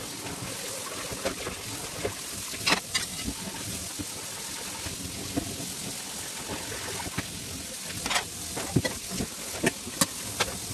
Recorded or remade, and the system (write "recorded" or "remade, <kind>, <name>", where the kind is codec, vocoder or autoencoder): recorded